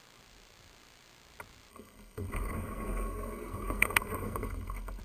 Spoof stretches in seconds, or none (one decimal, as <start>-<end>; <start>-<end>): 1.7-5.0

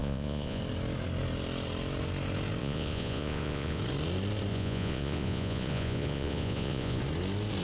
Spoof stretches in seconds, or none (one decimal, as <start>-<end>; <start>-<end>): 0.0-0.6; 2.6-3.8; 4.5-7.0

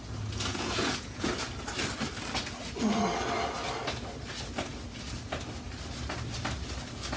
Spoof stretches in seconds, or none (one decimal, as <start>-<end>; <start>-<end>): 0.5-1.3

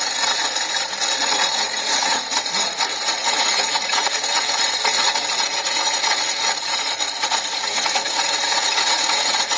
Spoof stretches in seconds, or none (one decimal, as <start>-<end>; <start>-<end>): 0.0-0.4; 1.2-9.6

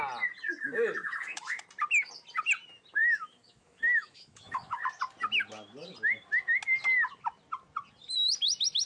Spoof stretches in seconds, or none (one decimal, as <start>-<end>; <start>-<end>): 0.5-1.6; 3.0-4.8

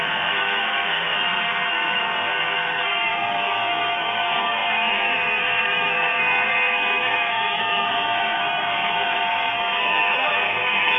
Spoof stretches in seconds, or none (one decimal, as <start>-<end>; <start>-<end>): 0.0-11.0

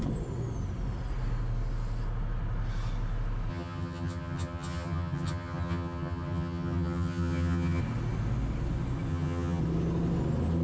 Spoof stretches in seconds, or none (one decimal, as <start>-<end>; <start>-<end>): 3.5-7.8; 9.1-9.6

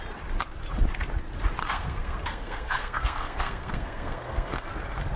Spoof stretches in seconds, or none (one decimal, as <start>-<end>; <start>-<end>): 1.6-4.7